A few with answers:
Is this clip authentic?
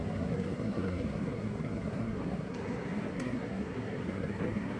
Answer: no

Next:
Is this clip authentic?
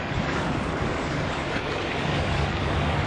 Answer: no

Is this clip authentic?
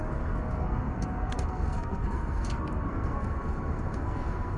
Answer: no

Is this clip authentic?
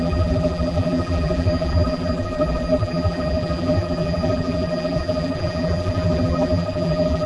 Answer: no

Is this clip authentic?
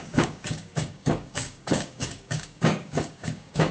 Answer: no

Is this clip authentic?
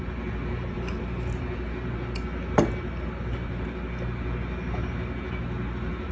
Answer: yes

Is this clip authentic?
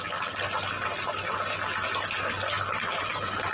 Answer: yes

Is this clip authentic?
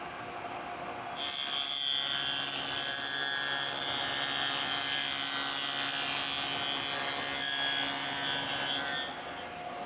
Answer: yes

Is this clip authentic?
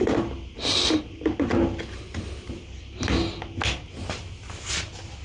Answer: yes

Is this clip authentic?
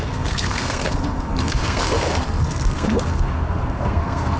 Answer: no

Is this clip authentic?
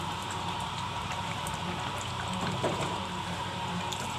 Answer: no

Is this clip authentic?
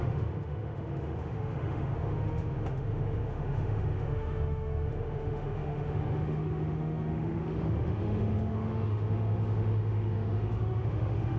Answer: no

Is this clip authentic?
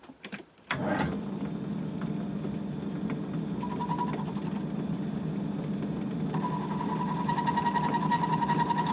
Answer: yes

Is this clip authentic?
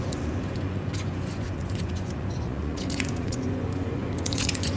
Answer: no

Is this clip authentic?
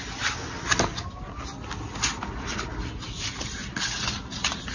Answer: yes